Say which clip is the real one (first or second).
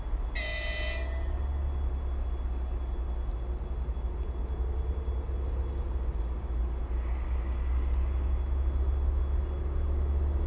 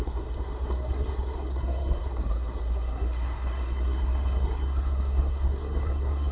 first